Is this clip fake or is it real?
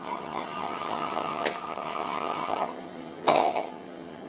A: fake